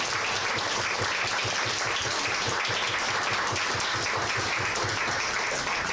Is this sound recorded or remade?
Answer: recorded